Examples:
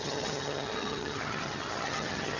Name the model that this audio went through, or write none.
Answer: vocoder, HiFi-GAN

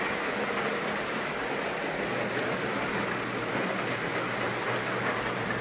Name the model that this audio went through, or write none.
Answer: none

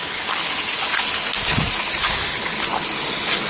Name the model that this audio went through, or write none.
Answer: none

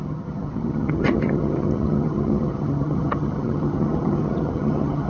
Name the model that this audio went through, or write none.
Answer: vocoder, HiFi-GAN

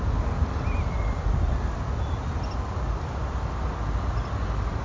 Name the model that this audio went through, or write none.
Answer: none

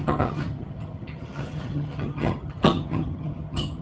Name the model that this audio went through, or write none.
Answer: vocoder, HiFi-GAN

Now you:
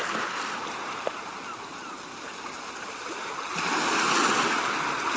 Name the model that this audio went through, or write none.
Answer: none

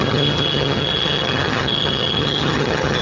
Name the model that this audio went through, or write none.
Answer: vocoder, HiFi-GAN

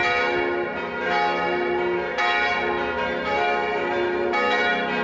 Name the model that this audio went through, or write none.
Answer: none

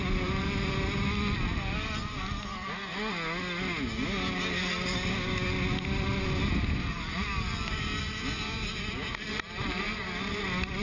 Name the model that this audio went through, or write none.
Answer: none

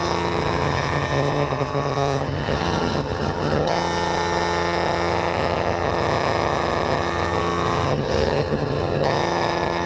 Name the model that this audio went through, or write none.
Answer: vocoder, HiFi-GAN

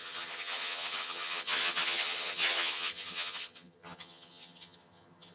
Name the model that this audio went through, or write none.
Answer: vocoder, HiFi-GAN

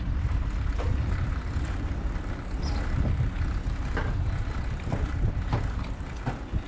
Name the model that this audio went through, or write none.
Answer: none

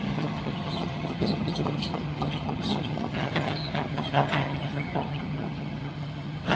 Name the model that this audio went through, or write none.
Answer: vocoder, HiFi-GAN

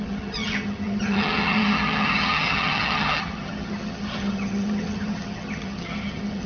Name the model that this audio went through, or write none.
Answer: vocoder, HiFi-GAN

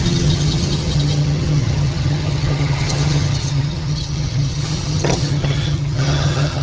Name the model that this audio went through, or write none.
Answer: vocoder, HiFi-GAN